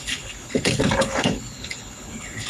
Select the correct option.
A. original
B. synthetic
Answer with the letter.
B